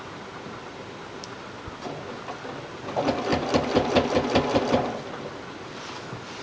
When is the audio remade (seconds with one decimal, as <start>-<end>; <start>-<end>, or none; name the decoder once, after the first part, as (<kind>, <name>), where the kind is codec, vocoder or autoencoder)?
none

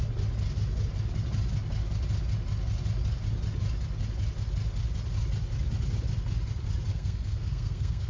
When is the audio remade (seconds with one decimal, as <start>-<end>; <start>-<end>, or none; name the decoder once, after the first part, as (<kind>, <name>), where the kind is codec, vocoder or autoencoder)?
6.9-8.1 (codec, SNAC)

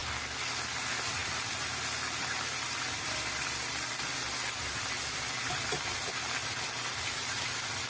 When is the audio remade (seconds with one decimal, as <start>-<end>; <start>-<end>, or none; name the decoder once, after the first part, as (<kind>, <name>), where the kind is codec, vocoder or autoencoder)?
0.0-7.9 (vocoder, BigVGAN v2)

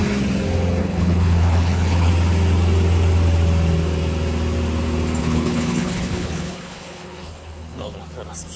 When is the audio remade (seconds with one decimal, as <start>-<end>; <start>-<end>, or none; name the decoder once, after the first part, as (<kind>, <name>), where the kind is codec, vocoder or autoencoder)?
0.8-2.1 (codec, HILCodec); 5.2-8.0

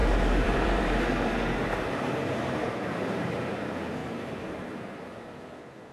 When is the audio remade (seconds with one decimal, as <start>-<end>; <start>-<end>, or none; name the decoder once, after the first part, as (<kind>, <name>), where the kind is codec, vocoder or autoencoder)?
0.0-3.5 (vocoder, BigVGAN v2); 4.0-4.6